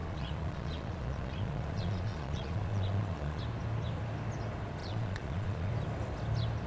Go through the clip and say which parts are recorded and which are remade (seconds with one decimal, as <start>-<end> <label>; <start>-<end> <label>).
0.0-3.4 remade; 3.4-4.8 recorded; 4.8-5.7 remade; 5.7-6.7 recorded